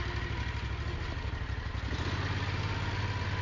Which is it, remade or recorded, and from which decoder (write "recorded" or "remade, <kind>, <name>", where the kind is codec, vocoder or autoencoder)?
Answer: recorded